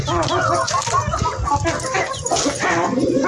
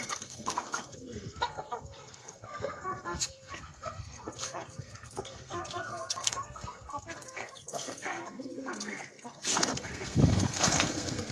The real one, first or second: first